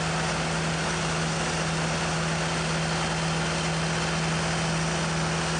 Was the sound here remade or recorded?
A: recorded